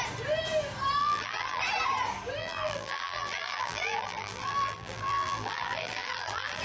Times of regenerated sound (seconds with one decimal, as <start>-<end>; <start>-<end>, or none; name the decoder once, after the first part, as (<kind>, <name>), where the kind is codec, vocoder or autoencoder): 1.0-1.6 (vocoder, BigVGAN v2); 2.4-6.6